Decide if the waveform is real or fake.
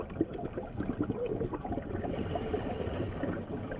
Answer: real